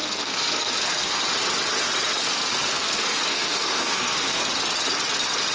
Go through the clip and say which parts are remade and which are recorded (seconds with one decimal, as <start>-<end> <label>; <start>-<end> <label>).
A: 0.0-1.2 remade; 1.2-2.2 recorded; 2.2-4.4 remade; 4.4-5.5 recorded